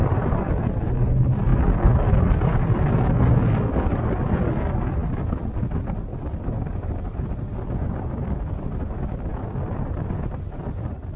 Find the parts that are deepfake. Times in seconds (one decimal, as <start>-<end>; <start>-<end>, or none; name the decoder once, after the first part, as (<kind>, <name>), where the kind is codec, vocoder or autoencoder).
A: none